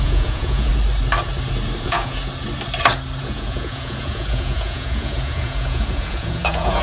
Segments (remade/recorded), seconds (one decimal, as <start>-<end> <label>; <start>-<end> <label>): 0.0-0.7 remade; 0.7-1.8 recorded; 1.8-2.2 remade; 2.2-3.2 recorded; 3.2-6.8 remade